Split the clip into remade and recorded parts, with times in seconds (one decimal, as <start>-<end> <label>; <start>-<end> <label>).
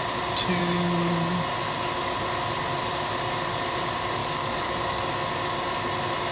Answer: 0.0-4.2 recorded; 4.2-5.0 remade; 5.0-6.3 recorded